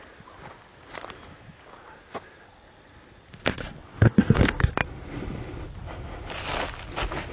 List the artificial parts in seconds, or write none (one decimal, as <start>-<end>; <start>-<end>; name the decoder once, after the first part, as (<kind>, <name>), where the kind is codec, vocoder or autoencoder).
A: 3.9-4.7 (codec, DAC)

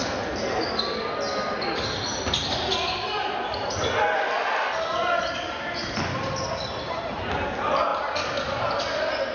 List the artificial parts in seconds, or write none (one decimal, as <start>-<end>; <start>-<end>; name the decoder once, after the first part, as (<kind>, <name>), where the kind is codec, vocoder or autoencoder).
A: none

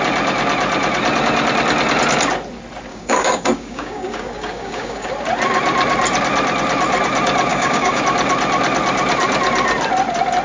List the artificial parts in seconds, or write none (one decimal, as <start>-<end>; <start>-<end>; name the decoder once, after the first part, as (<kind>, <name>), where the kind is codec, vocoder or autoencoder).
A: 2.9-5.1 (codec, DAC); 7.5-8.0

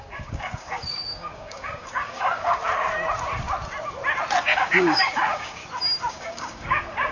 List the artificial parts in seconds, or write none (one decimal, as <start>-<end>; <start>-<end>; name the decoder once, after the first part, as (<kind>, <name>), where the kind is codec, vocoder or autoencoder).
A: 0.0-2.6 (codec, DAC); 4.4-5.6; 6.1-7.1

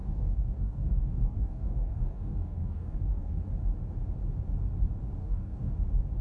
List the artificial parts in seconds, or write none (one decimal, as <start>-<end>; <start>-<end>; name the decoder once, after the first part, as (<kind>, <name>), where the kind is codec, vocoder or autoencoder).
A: 0.0-3.4 (codec, DAC); 5.2-5.7

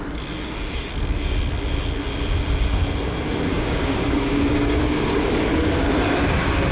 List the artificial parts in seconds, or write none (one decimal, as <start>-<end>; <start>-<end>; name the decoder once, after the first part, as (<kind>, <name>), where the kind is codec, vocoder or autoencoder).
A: 3.5-5.9 (codec, DAC)

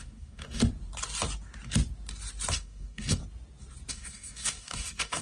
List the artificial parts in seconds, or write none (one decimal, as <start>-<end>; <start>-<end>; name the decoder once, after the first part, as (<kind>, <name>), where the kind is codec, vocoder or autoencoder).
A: 0.0-0.6 (codec, DAC); 2.5-3.2; 3.9-5.2

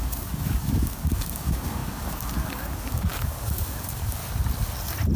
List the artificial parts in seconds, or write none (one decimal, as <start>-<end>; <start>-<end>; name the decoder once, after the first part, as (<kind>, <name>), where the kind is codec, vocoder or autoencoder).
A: 0.0-4.2 (codec, DAC)